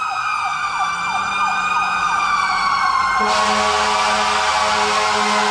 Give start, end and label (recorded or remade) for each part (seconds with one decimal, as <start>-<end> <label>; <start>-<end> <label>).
0.0-5.5 recorded